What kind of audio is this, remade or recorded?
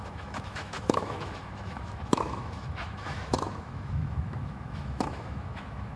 remade